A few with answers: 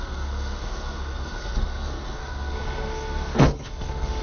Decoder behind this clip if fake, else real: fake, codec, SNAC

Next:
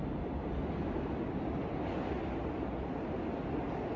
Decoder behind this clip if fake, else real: real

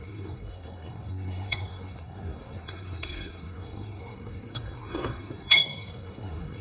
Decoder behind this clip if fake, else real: fake, codec, SNAC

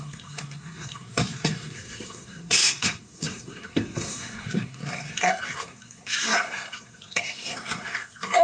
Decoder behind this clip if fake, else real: fake, codec, SNAC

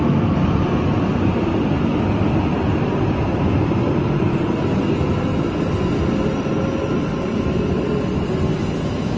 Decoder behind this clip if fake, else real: real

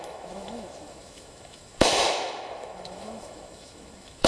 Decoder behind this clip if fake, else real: fake, autoencoder, DAC-VAE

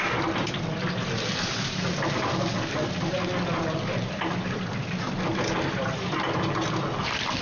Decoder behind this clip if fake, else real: real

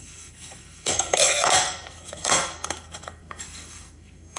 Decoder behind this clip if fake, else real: fake, codec, SNAC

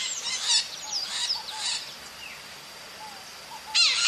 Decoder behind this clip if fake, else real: real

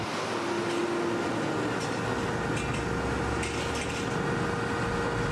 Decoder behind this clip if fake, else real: real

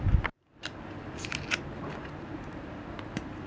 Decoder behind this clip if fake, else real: fake, vocoder, BigVGAN v2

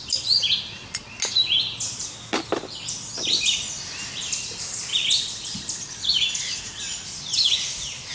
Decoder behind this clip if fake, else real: real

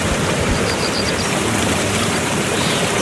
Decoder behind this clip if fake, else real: fake, vocoder, BigVGAN v2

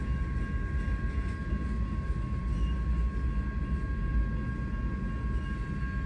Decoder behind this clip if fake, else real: real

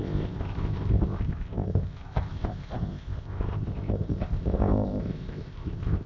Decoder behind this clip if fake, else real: fake, codec, ZipCodec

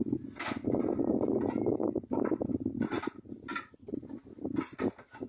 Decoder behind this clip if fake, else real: real